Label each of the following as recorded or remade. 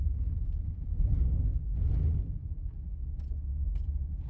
recorded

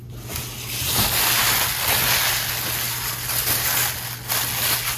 recorded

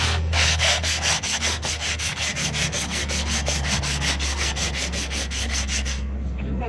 remade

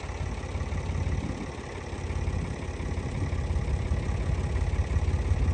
recorded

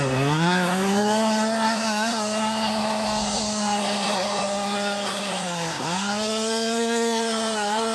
remade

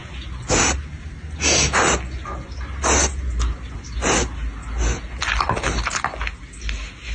recorded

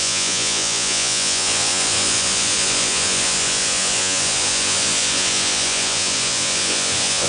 remade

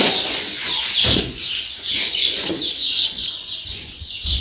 remade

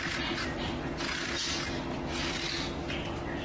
recorded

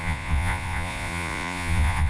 remade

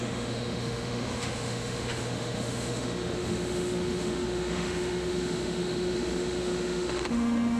remade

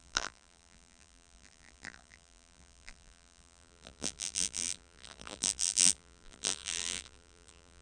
remade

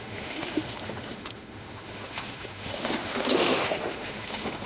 remade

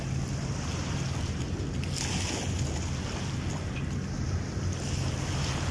recorded